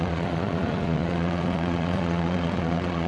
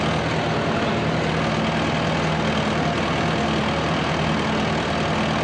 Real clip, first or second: second